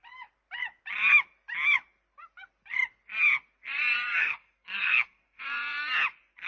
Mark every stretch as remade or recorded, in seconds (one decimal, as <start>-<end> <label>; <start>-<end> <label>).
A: 0.0-4.2 recorded; 4.2-5.4 remade; 5.4-6.5 recorded